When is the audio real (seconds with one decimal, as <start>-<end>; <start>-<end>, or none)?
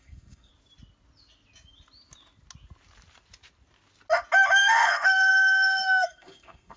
0.5-4.6